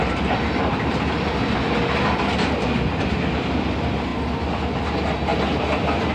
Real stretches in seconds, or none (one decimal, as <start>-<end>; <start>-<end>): 0.0-6.1